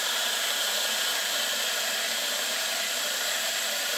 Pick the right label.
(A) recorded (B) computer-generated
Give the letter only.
B